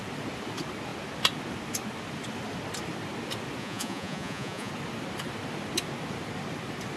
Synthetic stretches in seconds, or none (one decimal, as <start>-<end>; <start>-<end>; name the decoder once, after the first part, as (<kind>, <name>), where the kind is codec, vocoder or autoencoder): 3.6-4.7 (vocoder, Vocos)